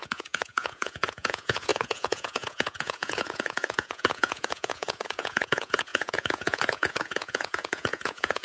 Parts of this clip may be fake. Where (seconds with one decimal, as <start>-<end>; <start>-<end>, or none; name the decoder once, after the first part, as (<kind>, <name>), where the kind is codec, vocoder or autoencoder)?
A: 0.0-8.4 (vocoder, Vocos)